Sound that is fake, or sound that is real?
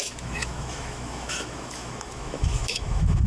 fake